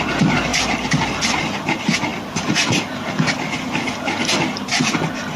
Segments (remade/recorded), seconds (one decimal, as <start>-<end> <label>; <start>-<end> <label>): 0.0-5.4 recorded